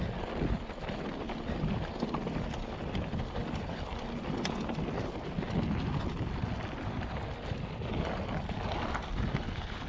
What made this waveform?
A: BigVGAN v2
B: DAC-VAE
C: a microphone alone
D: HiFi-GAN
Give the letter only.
C